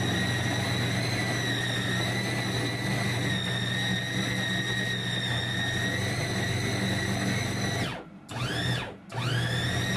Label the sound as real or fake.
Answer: real